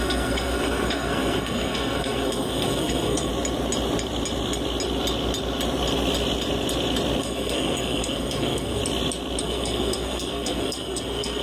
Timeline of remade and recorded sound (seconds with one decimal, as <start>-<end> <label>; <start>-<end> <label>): 0.0-3.3 remade; 3.3-7.2 recorded; 7.2-8.8 remade; 8.8-9.4 recorded; 9.4-11.4 remade